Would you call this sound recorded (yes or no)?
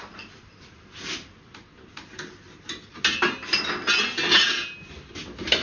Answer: yes